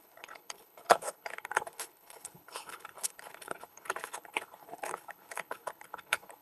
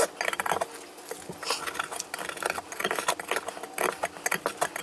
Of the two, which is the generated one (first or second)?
first